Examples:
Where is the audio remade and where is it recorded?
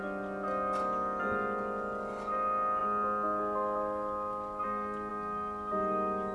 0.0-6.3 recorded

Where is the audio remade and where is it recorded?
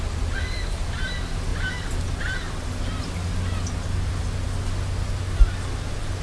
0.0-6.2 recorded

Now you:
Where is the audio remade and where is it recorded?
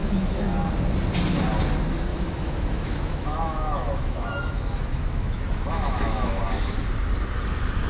0.0-0.7 remade; 0.7-2.1 recorded; 2.1-6.4 remade; 6.4-7.9 recorded